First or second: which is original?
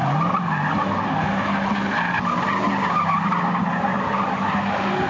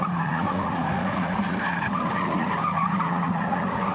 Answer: first